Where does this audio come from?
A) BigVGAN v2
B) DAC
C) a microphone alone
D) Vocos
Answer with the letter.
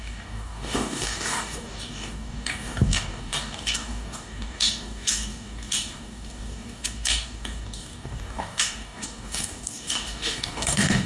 B